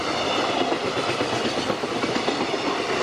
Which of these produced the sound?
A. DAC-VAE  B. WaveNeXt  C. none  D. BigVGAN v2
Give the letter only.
C